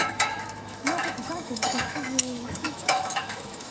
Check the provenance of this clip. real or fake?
fake